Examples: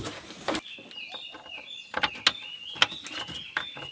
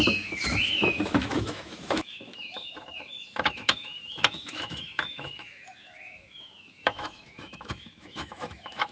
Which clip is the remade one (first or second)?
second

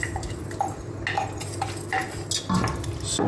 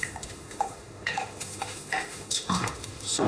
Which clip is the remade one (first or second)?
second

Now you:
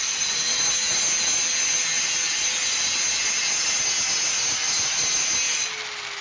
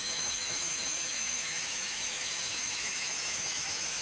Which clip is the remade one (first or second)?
second